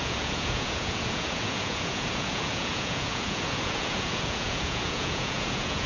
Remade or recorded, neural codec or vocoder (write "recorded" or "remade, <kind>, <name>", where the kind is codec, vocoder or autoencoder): remade, vocoder, Vocos